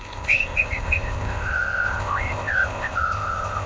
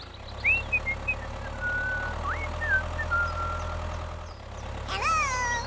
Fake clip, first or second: first